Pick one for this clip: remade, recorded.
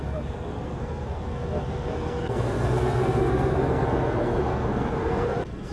remade